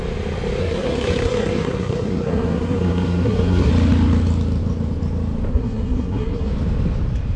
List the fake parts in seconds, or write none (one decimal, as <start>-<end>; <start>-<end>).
0.6-3.7; 5.5-6.5